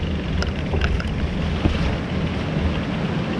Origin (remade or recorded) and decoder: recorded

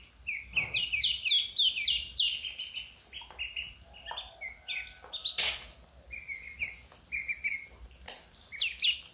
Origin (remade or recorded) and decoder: recorded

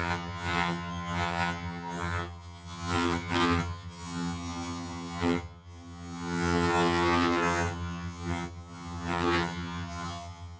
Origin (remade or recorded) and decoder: remade, vocoder, HiFi-GAN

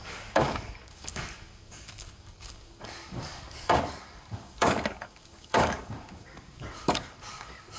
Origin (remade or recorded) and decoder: remade, codec, DAC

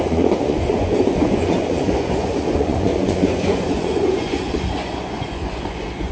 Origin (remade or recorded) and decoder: remade, vocoder, Vocos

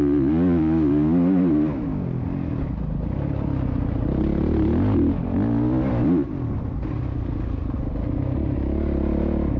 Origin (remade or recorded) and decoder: recorded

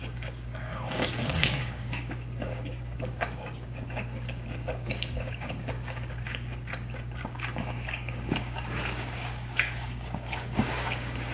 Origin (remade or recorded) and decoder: remade, codec, DAC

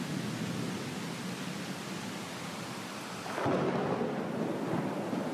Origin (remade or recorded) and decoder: recorded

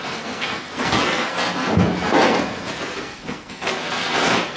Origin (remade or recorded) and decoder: remade, codec, SNAC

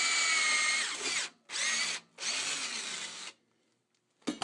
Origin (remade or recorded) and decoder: recorded